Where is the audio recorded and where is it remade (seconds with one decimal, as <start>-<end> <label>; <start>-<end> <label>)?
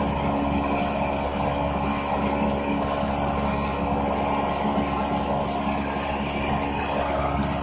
0.0-7.6 recorded